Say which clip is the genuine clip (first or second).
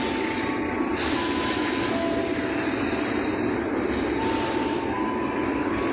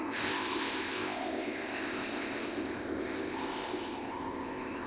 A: first